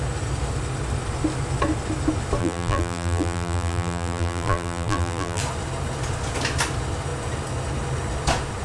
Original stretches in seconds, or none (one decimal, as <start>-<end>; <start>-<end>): 0.0-2.4; 5.4-8.6